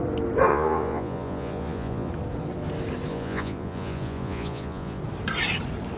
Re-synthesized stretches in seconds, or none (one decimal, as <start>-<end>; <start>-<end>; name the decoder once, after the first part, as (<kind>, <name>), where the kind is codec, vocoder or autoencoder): 0.5-2.1 (vocoder, Vocos); 3.1-5.0